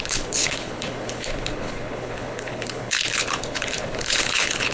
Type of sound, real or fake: fake